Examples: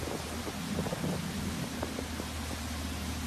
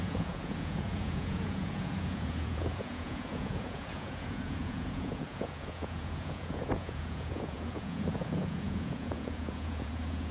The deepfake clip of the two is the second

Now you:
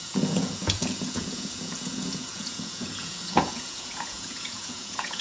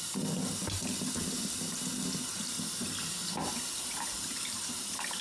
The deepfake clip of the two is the first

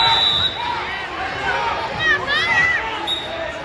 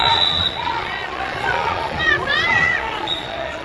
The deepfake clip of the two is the second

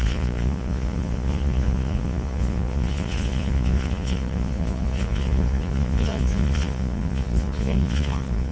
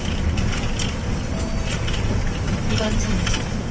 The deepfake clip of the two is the first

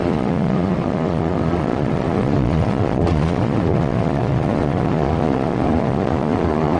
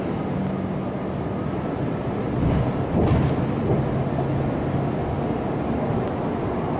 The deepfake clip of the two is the first